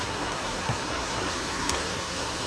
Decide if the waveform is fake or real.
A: fake